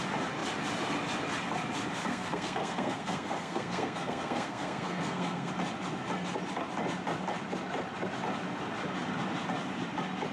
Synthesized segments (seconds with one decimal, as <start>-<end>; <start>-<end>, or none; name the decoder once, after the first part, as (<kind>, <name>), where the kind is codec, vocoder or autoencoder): 2.1-5.5 (codec, SNAC)